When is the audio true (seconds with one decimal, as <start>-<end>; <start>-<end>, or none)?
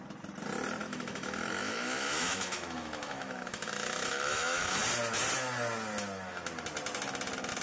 0.0-0.8; 4.8-7.6